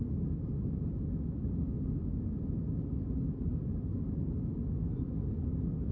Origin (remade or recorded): recorded